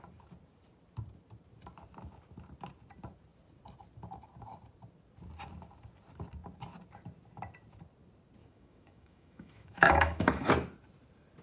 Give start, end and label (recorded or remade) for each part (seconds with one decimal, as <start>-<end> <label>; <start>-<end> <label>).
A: 0.0-8.4 recorded; 8.4-10.5 remade; 10.5-11.4 recorded